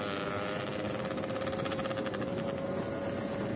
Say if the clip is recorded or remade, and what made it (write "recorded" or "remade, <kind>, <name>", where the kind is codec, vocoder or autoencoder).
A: recorded